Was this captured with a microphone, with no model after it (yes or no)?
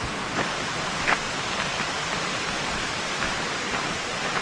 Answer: no